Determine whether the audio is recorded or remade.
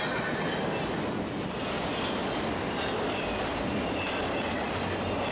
recorded